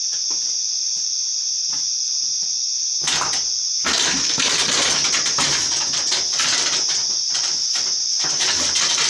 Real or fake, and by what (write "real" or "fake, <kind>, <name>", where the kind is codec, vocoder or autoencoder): real